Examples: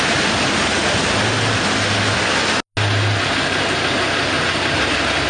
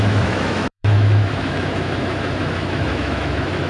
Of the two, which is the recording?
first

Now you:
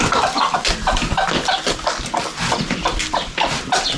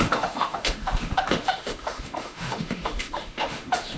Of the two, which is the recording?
first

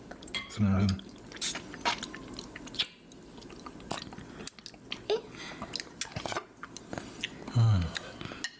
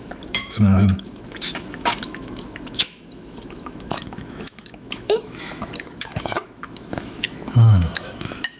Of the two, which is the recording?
first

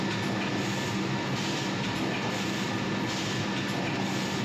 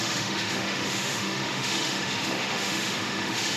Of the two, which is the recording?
first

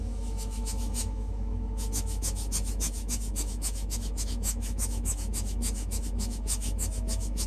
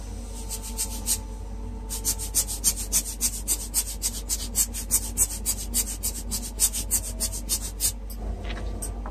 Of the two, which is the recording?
second